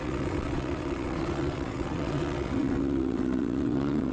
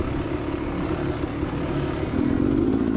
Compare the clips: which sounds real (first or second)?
second